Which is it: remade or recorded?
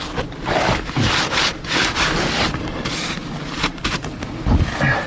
recorded